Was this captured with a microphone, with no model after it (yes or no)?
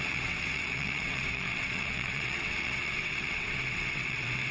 no